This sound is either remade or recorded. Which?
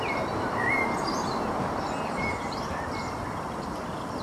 recorded